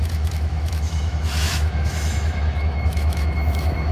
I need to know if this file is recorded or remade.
remade